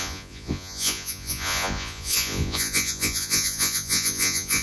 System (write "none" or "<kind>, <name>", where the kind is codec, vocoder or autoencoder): vocoder, Vocos